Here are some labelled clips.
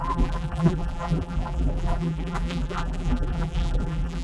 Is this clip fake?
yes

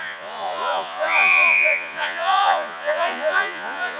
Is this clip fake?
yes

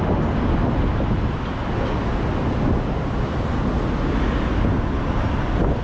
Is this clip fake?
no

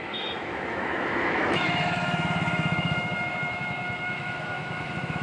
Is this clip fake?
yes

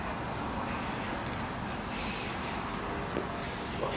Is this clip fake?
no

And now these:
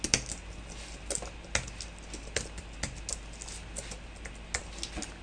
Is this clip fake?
no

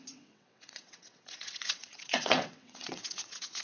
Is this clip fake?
yes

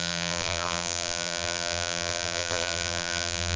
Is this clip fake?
yes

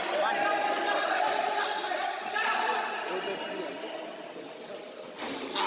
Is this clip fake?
no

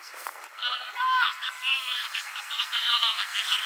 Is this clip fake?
yes